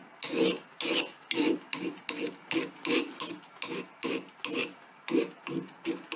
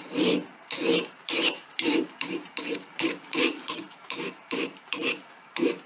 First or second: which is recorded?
first